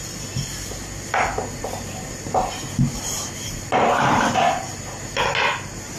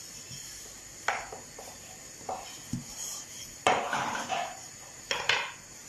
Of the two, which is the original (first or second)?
first